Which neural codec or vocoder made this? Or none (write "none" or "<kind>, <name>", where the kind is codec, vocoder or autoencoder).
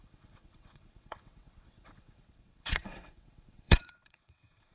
vocoder, WaveNeXt